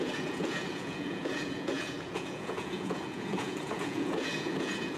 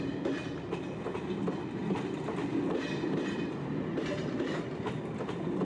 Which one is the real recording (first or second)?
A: second